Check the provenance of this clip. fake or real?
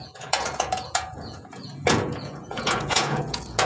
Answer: fake